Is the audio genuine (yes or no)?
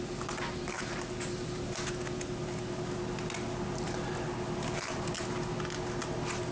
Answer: yes